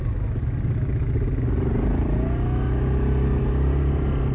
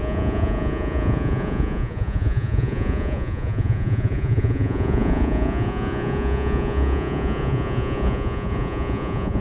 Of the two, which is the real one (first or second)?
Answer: first